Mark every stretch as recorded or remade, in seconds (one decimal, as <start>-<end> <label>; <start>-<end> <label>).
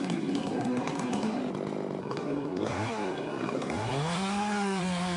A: 0.0-1.4 remade; 1.4-2.0 recorded; 2.0-5.2 remade